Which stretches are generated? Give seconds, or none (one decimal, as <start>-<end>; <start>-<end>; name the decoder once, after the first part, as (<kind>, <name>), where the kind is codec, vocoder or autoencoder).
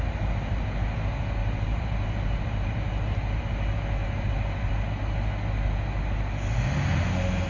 1.4-3.4 (vocoder, BigVGAN v2); 4.0-4.7